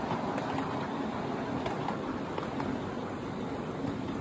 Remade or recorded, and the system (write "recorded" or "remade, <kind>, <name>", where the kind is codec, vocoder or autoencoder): recorded